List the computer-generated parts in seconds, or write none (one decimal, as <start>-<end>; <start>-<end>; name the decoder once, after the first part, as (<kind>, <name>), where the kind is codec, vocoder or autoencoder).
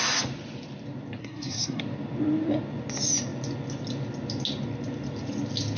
1.2-1.8 (codec, SNAC)